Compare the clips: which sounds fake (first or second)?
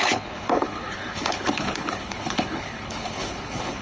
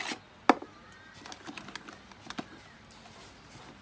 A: first